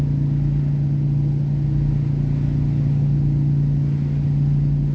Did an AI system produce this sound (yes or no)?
no